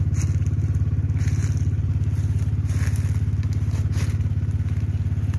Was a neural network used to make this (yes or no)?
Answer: no